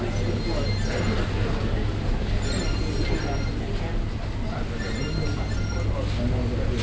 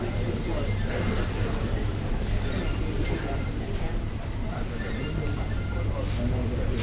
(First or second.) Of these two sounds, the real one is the first